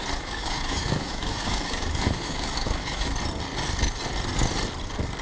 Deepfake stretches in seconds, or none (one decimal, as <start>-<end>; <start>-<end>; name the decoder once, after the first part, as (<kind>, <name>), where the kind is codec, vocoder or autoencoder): 0.0-3.1 (autoencoder, DAC-VAE)